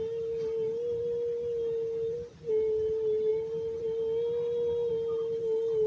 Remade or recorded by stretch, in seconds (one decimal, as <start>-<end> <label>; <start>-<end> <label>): 0.0-5.9 recorded